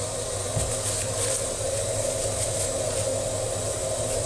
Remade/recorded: recorded